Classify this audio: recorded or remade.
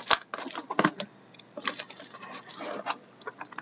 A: recorded